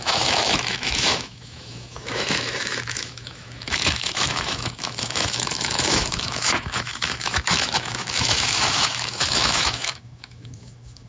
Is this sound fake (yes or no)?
yes